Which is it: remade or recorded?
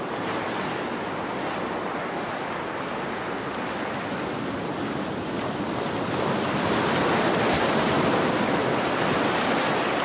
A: recorded